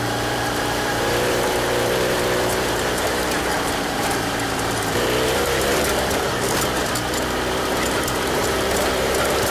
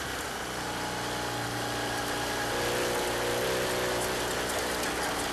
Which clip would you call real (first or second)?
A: second